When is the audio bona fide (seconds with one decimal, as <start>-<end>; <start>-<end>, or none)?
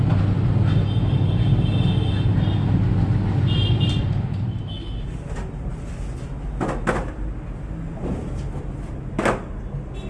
0.0-10.1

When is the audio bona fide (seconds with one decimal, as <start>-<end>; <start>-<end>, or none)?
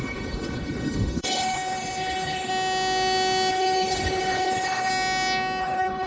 2.5-3.5; 4.9-5.6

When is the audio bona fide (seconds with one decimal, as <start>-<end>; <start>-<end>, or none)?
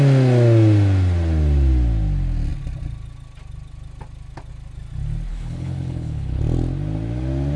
0.0-5.3; 6.4-7.6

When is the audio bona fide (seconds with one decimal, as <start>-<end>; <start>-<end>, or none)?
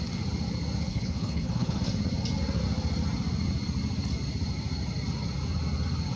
0.0-0.9; 1.8-6.2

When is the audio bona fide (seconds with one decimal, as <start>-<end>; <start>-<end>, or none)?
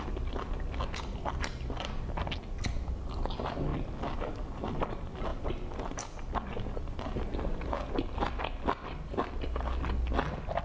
0.0-10.6